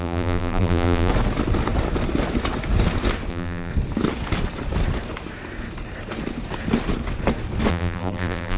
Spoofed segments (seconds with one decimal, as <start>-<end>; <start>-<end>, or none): 0.0-1.1; 3.3-3.7; 7.7-8.6